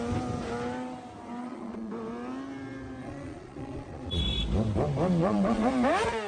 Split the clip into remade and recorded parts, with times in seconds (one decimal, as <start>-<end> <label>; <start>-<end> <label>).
0.0-1.4 recorded; 1.4-1.9 remade; 1.9-3.0 recorded; 3.0-4.2 remade; 4.2-5.2 recorded; 5.2-5.7 remade; 5.7-6.3 recorded